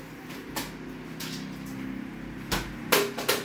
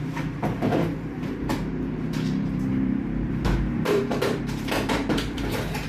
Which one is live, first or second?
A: first